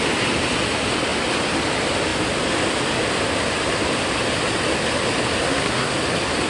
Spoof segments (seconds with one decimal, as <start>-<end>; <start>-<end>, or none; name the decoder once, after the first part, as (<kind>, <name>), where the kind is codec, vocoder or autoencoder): 5.4-5.9 (codec, SNAC)